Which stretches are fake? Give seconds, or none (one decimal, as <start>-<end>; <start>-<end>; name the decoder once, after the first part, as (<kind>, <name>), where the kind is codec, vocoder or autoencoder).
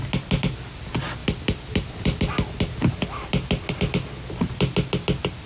none